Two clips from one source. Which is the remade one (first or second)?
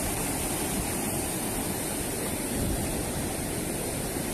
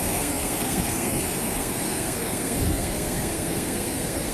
second